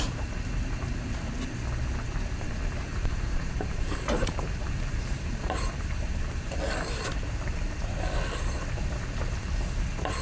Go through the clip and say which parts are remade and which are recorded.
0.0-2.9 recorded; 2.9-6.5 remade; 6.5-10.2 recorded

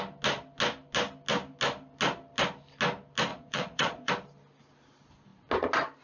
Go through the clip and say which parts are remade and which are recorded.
0.0-3.3 recorded; 3.3-4.1 remade; 4.1-6.0 recorded

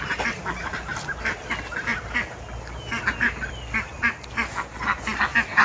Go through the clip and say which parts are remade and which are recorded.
0.0-5.6 recorded

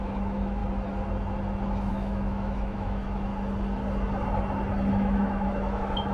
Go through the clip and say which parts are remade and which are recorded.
0.0-0.6 remade; 0.6-1.9 recorded; 1.9-3.3 remade; 3.3-4.9 recorded; 4.9-6.1 remade

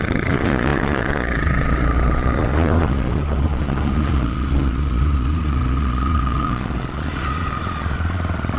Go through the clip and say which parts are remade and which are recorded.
0.0-8.6 remade